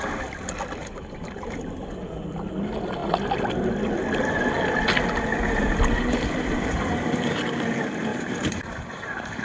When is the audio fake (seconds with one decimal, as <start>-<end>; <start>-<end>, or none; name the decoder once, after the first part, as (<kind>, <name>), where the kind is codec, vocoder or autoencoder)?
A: 0.8-1.8 (vocoder, BigVGAN v2); 5.3-7.5; 8.1-9.4